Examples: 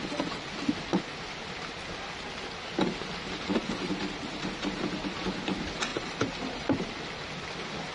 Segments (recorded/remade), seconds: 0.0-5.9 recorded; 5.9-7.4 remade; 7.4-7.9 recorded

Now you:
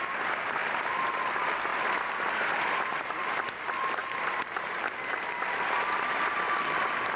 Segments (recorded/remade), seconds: 0.0-0.6 recorded; 0.6-1.1 remade; 1.1-1.7 recorded; 1.7-2.4 remade; 2.4-4.0 recorded; 4.0-6.2 remade; 6.2-7.2 recorded

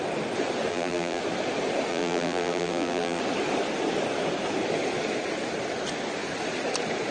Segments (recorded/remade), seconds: 0.0-0.7 recorded; 0.7-1.2 remade; 1.2-1.9 recorded; 1.9-3.2 remade; 3.2-7.1 recorded